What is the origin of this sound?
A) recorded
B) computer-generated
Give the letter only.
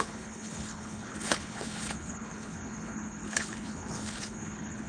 B